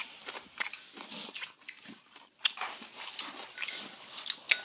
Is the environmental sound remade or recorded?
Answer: recorded